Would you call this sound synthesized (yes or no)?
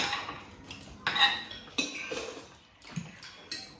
no